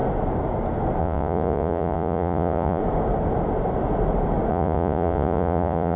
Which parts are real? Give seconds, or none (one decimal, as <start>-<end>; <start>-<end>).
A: 0.0-1.0; 2.8-4.5